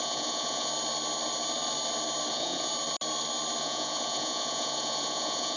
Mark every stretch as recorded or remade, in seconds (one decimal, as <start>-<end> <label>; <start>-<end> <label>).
0.0-0.7 remade; 0.7-2.3 recorded; 2.3-2.7 remade; 2.7-3.6 recorded; 3.6-5.6 remade